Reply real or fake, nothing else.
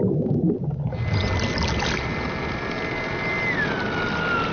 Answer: real